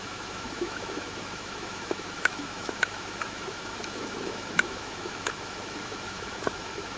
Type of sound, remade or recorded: remade